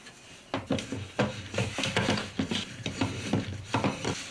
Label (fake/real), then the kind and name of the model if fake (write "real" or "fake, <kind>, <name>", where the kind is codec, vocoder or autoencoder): real